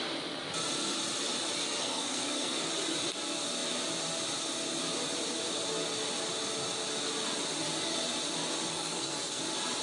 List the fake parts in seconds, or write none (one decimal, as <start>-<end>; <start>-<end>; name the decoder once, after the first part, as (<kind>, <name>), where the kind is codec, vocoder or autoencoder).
1.8-2.7 (codec, SNAC); 8.7-9.4